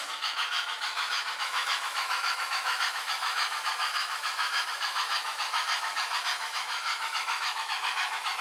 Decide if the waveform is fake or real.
fake